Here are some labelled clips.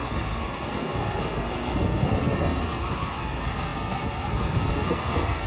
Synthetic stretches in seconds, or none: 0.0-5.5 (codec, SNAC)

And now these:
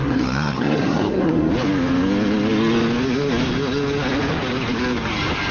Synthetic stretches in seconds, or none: 0.0-1.5 (codec, SNAC)

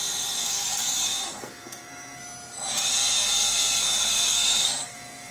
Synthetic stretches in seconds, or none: 0.4-2.2 (codec, SNAC); 2.9-5.3

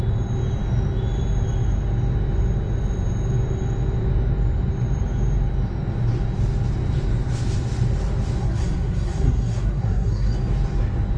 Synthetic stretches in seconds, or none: 8.4-10.3 (codec, SNAC)

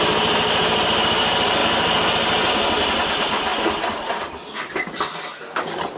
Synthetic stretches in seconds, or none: none

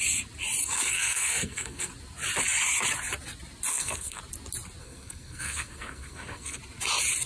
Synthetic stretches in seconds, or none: 0.6-1.9 (codec, SNAC); 3.7-4.2; 4.8-6.6

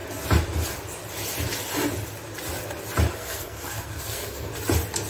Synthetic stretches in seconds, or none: 3.1-4.5 (codec, SNAC)